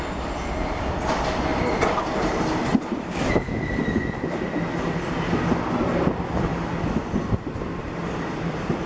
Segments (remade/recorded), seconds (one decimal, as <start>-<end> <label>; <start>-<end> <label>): 0.0-2.7 recorded; 2.7-3.4 remade; 3.4-8.9 recorded